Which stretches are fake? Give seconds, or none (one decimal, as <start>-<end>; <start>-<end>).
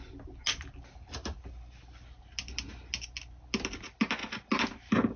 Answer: none